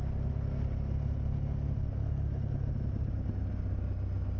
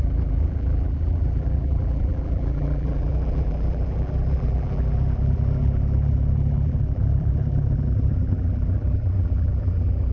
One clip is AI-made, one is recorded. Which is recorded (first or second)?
first